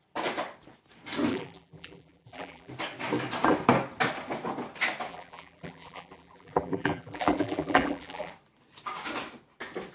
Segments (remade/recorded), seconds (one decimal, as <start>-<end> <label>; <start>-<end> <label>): 0.0-1.3 recorded; 1.3-2.7 remade; 2.7-5.1 recorded; 5.1-8.3 remade; 8.3-9.9 recorded